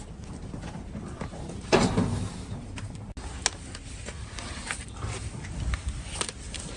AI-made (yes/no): no